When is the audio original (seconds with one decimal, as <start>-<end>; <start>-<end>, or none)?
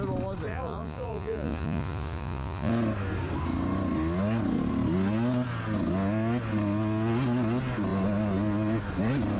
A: 0.0-0.5; 2.7-9.4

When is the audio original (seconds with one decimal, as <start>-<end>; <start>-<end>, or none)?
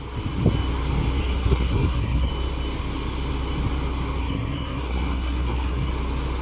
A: 0.0-1.2; 2.3-4.2; 5.9-6.4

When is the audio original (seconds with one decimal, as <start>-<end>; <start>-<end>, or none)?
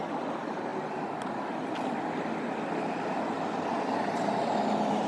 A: 0.0-5.1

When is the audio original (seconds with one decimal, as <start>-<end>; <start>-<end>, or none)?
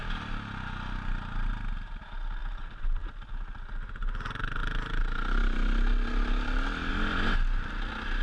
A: 0.0-8.2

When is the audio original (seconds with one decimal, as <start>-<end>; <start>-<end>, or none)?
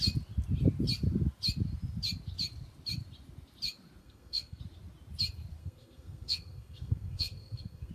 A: 0.0-4.0; 4.6-5.6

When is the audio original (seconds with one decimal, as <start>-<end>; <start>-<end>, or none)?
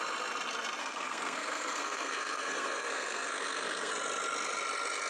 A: 0.0-0.8; 3.9-5.1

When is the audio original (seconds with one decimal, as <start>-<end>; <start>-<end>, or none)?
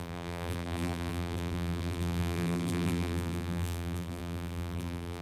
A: none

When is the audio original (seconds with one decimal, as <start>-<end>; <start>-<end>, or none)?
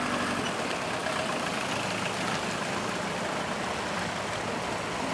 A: 0.0-5.1